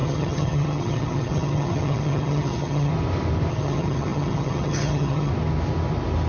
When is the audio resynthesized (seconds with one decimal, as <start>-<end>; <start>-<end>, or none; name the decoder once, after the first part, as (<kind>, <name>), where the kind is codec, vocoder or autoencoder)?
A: 0.0-2.9 (vocoder, HiFi-GAN); 3.5-5.3